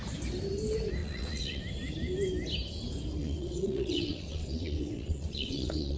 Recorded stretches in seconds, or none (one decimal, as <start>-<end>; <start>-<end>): 0.0-1.0; 1.6-3.2